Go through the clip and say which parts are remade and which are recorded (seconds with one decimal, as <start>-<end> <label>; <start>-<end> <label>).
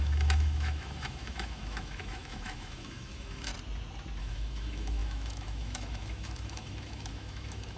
0.0-3.5 remade; 3.5-4.2 recorded; 4.2-7.8 remade